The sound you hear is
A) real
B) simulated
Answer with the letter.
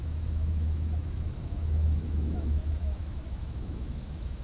B